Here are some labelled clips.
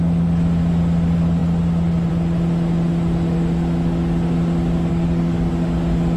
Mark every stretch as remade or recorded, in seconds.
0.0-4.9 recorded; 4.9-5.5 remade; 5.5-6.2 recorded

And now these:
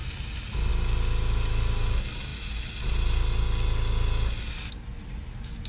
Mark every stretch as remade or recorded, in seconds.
0.0-5.7 recorded

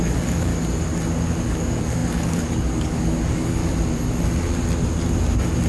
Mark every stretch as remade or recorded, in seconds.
0.0-0.5 remade; 0.5-1.5 recorded; 1.5-3.6 remade; 3.6-5.7 recorded

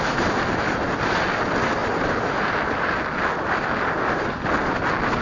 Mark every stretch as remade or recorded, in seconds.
0.0-5.2 recorded

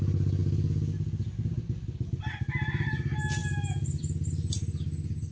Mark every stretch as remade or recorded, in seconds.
0.0-5.3 recorded